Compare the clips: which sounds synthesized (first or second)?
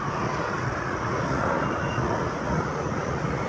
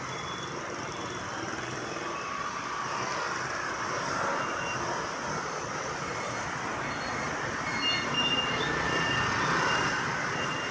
first